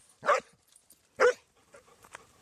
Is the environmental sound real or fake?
fake